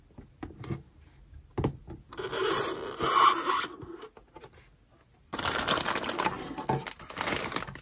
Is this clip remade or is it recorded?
recorded